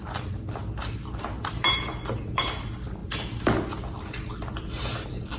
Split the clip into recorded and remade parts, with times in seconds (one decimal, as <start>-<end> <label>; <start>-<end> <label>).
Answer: 0.0-5.4 recorded